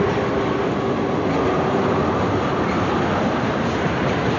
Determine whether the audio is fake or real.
real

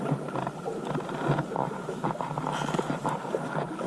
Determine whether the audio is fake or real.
real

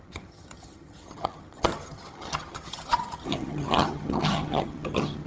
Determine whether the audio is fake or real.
fake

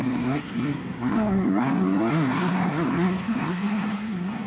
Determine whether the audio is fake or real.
fake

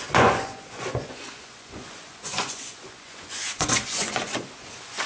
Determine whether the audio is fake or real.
fake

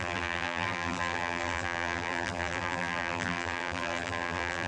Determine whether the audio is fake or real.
fake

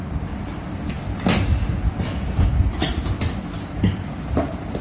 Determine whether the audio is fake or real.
real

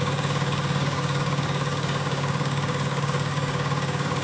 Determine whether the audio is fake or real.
fake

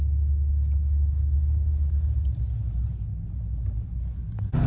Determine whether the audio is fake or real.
real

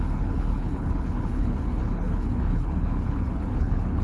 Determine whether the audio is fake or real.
fake